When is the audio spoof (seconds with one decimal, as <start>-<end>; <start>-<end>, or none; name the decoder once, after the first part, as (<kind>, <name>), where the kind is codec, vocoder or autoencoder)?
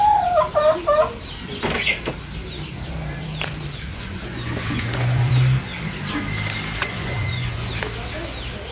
3.9-5.3 (vocoder, Vocos); 6.8-7.7